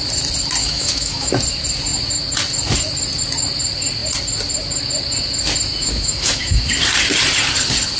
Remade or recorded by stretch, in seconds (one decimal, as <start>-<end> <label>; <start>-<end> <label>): 0.0-0.6 recorded; 0.6-1.3 remade; 1.3-5.8 recorded; 5.8-6.7 remade; 6.7-8.0 recorded